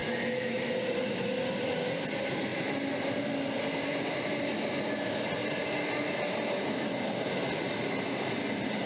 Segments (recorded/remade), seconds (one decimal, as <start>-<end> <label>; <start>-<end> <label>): 0.0-0.7 remade; 0.7-8.9 recorded